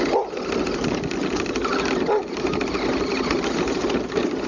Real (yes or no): yes